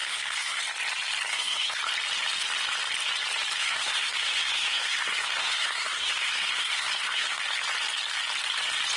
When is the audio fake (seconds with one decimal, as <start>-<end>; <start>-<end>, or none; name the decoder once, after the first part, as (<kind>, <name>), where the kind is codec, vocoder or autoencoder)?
0.0-0.6 (codec, SNAC); 1.3-1.8; 3.6-7.4